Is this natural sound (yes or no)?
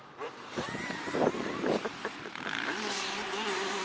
no